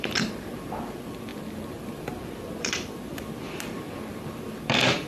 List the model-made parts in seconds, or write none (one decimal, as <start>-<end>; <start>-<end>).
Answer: 0.0-5.1